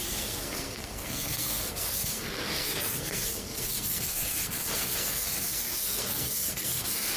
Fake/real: fake